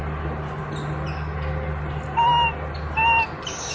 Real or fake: real